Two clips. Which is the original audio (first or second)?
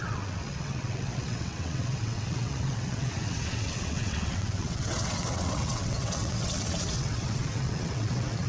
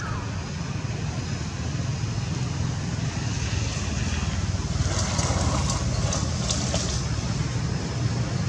second